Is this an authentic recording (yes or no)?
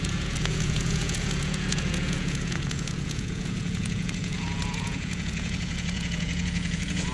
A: no